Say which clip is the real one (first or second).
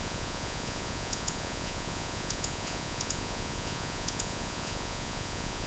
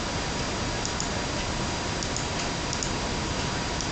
second